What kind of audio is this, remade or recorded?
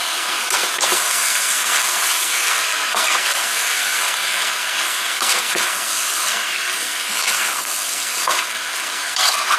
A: remade